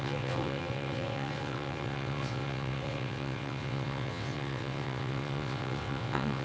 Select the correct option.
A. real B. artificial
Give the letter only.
B